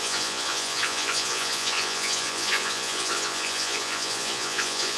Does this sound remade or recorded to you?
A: remade